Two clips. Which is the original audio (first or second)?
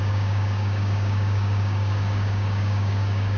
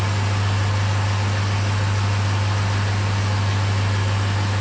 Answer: second